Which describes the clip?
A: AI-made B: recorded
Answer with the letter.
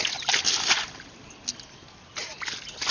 B